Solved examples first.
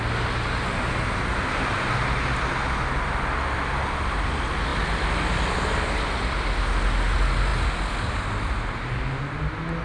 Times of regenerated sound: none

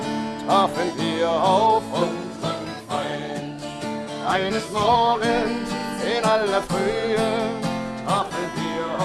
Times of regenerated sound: 2.0-5.3 (codec, SNAC)

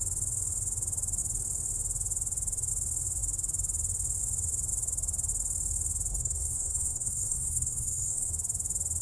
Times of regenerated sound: 6.1-8.3 (codec, SNAC)

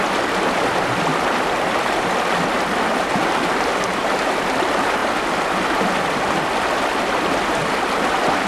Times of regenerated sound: none

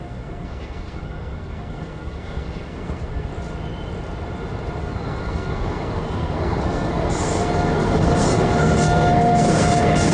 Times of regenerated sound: 0.0-3.3 (codec, SNAC); 4.8-10.1

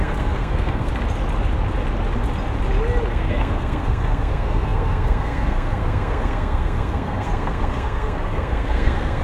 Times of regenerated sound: 0.0-0.9 (codec, SNAC); 3.1-9.2